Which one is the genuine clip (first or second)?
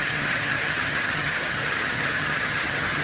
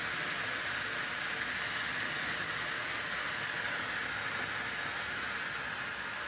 second